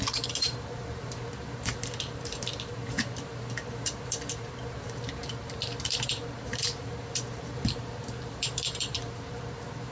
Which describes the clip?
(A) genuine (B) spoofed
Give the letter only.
B